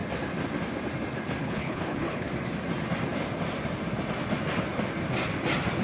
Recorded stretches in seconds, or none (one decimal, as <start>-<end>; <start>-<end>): 0.0-1.4; 2.3-5.8